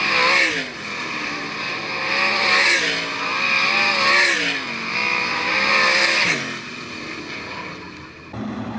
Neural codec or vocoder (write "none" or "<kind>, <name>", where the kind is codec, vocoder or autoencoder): none